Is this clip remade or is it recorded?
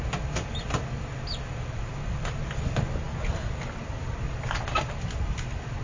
recorded